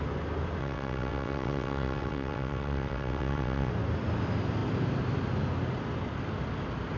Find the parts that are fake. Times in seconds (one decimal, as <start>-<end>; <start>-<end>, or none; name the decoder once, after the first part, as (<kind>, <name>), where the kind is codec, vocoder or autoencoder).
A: 0.6-3.7 (vocoder, WaveNeXt)

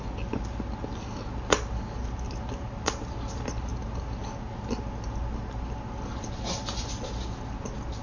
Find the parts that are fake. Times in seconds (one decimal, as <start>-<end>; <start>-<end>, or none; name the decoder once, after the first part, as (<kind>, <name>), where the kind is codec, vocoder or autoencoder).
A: none

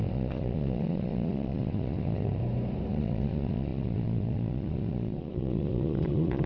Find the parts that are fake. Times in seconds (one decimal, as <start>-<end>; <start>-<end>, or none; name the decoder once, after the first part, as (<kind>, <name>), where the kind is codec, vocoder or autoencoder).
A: 0.0-2.4 (vocoder, Vocos); 2.9-6.5

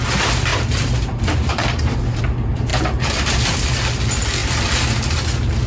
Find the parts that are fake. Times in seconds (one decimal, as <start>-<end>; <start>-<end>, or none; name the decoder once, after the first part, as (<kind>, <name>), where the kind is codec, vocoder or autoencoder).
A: 0.5-2.2 (vocoder, BigVGAN v2); 2.7-3.8

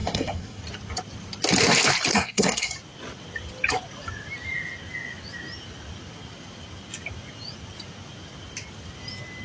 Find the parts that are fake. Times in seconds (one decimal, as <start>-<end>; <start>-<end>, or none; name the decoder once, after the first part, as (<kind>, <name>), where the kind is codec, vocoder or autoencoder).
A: 0.0-0.6 (codec, SNAC); 2.1-2.7

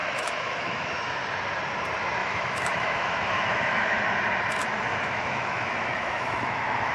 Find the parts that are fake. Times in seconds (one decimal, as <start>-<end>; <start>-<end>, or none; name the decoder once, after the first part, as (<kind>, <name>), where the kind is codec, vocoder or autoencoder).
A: 0.0-0.9 (autoencoder, DAC-VAE); 2.2-4.0; 4.6-6.9

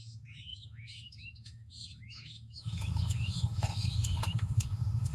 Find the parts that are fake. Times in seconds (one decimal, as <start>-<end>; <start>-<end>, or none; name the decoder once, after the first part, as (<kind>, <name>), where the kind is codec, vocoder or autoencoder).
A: 0.0-5.1 (autoencoder, DAC-VAE)